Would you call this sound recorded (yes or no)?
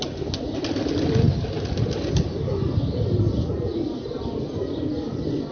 yes